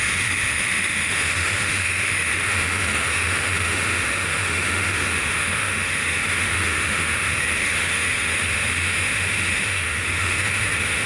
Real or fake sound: fake